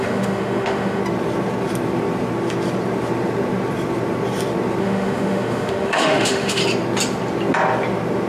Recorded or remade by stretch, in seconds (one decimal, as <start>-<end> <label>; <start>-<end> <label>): 0.0-1.0 remade; 1.0-4.8 recorded; 4.8-6.6 remade; 6.6-8.3 recorded